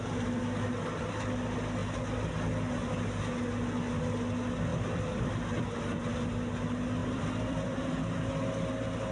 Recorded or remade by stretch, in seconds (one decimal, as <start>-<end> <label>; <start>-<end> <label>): 0.0-4.7 recorded; 4.7-5.3 remade; 5.3-7.0 recorded; 7.0-8.0 remade; 8.0-9.1 recorded